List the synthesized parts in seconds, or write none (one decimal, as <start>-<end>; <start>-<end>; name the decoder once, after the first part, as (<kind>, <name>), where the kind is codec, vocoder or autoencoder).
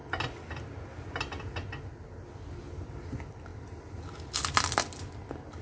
none